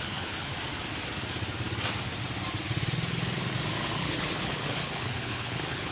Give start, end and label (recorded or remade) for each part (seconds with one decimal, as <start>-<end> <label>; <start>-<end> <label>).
0.0-0.5 remade; 0.5-4.0 recorded; 4.0-5.9 remade

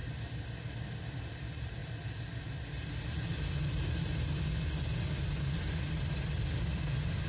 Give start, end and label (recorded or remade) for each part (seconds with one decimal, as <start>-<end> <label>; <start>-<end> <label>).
0.0-7.3 recorded

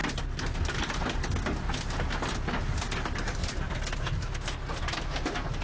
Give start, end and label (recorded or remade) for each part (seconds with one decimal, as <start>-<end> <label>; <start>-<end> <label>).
0.0-5.6 recorded

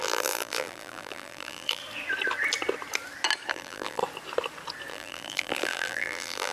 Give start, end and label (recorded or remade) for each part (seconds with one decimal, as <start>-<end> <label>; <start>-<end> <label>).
0.0-1.8 remade; 1.8-3.5 recorded; 3.5-4.0 remade; 4.0-4.9 recorded; 4.9-6.5 remade

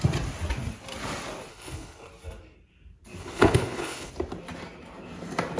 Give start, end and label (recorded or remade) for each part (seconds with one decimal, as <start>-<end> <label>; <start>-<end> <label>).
0.0-1.5 recorded; 1.5-2.1 remade; 2.1-3.2 recorded; 3.2-4.1 remade; 4.1-5.6 recorded